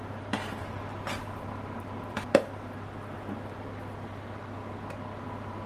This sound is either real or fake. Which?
real